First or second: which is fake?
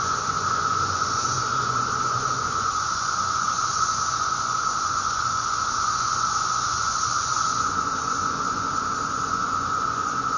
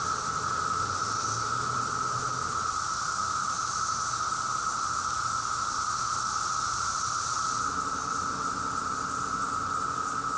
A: first